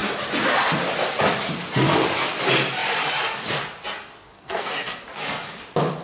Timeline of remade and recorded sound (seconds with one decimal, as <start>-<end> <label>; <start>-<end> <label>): 0.0-4.3 recorded; 4.3-5.0 remade; 5.0-6.0 recorded